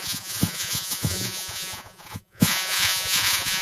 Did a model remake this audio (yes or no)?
yes